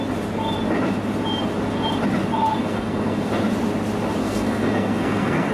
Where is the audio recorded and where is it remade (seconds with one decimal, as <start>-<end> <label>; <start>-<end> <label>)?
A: 0.0-2.6 recorded; 2.6-3.3 remade; 3.3-4.2 recorded; 4.2-5.5 remade